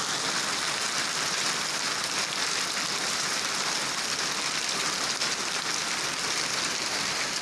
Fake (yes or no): no